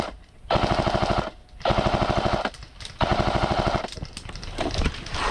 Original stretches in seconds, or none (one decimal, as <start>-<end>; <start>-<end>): 0.0-3.1; 3.8-5.3